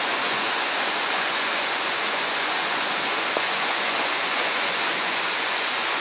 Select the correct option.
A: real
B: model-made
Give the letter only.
B